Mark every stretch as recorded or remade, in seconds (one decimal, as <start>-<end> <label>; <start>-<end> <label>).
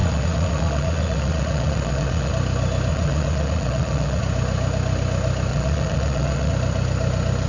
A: 0.0-2.3 remade; 2.3-2.9 recorded; 2.9-4.2 remade; 4.2-5.5 recorded; 5.5-6.5 remade; 6.5-7.5 recorded